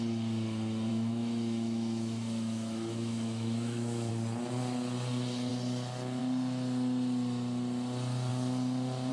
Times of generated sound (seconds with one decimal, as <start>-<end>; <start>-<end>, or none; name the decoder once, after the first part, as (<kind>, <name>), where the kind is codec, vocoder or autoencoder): 0.9-4.1 (autoencoder, DAC-VAE)